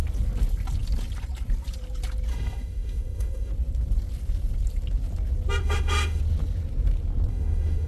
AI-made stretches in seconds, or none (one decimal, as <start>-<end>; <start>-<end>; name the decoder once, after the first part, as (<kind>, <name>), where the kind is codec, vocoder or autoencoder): 2.3-3.5 (autoencoder, DAC-VAE); 5.6-6.2; 7.3-7.9